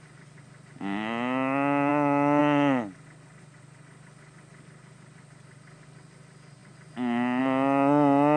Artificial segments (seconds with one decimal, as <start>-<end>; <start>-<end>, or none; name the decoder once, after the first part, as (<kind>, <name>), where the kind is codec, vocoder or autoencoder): none